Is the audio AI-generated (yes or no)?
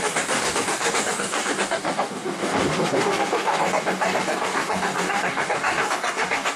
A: yes